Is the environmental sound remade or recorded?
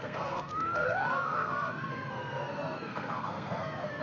remade